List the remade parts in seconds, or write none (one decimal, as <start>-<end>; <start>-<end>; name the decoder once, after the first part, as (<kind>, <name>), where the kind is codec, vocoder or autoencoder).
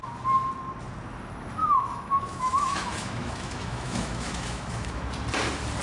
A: 1.6-5.1 (autoencoder, DAC-VAE)